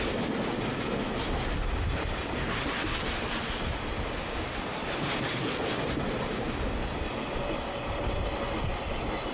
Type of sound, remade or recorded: recorded